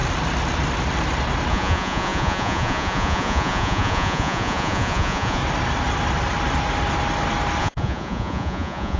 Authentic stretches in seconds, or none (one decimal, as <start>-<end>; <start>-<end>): 0.0-1.5; 5.4-7.6